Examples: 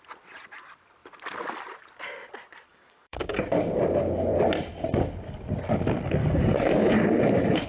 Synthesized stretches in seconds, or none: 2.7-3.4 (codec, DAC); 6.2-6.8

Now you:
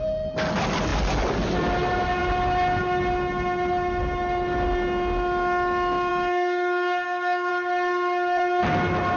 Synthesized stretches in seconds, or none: 6.1-7.5 (codec, DAC)

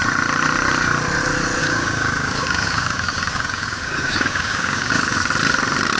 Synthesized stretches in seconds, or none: 1.6-5.2 (codec, DAC)

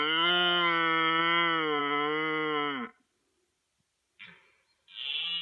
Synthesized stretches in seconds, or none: none

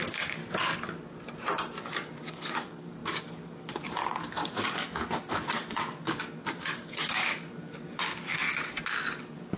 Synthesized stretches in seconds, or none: 0.0-0.4 (codec, DAC); 1.8-8.4; 9.2-9.6

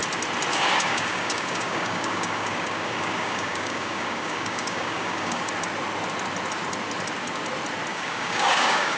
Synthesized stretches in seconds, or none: 0.5-5.5 (codec, DAC); 7.9-9.0